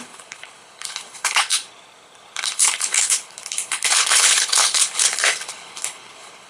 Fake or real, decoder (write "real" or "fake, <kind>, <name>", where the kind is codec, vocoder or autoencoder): fake, codec, HILCodec